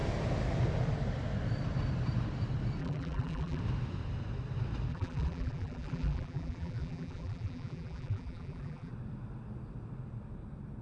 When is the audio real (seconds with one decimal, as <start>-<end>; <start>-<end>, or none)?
0.0-2.8; 3.6-4.9; 8.9-10.8